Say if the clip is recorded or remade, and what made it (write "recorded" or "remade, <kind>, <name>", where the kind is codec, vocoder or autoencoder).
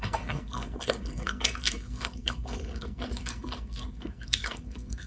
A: remade, codec, SNAC